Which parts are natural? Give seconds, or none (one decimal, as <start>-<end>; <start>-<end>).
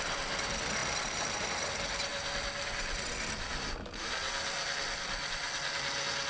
0.0-6.3